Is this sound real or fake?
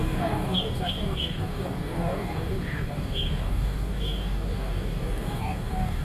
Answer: fake